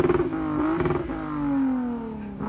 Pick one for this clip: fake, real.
real